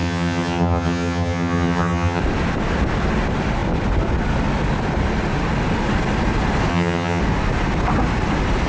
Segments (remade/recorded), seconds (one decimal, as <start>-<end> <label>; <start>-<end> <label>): 0.0-2.2 remade; 2.2-6.7 recorded; 6.7-7.2 remade; 7.2-8.7 recorded